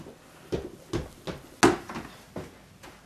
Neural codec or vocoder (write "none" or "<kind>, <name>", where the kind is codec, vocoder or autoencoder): none